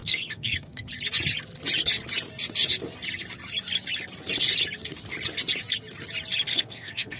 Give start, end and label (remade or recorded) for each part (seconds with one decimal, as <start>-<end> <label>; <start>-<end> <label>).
0.0-0.9 remade; 0.9-6.5 recorded; 6.5-7.2 remade

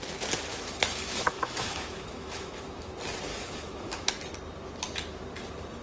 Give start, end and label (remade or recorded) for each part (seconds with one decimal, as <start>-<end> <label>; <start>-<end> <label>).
0.0-0.5 recorded; 0.5-2.9 remade; 2.9-3.3 recorded; 3.3-4.1 remade; 4.1-5.8 recorded